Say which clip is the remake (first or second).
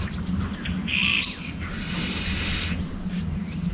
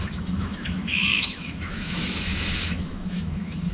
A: second